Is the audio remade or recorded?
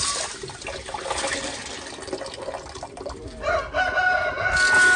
recorded